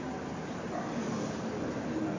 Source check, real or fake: real